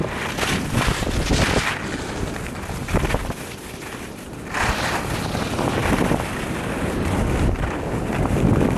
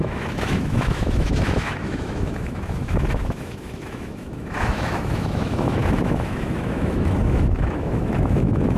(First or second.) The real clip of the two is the first